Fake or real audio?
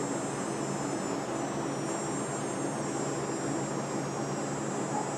real